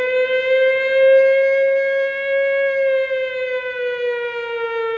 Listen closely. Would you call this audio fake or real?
real